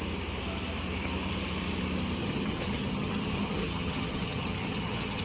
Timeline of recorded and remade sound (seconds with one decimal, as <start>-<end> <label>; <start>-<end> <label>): 0.0-2.2 recorded; 2.2-5.2 remade